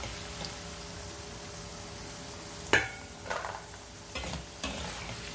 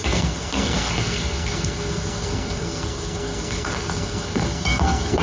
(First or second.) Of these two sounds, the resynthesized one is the second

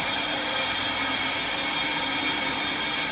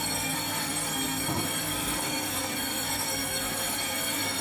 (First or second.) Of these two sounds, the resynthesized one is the second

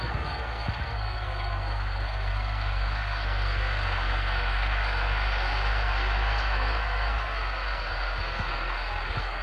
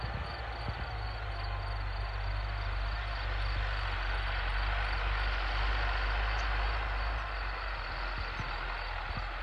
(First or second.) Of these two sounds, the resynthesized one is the first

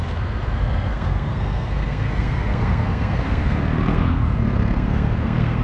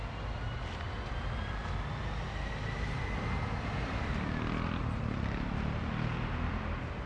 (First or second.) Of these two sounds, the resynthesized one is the first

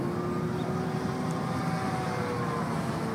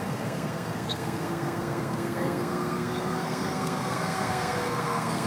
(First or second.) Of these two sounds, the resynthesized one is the second